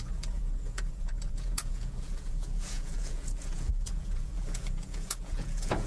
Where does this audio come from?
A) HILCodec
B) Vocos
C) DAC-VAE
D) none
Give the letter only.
B